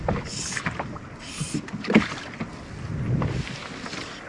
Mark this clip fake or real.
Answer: real